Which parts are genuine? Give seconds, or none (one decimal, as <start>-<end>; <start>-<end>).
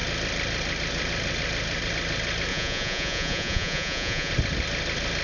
0.0-2.5; 4.3-5.2